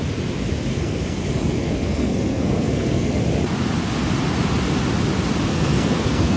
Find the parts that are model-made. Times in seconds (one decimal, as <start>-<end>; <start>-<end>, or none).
0.7-3.2; 5.5-6.4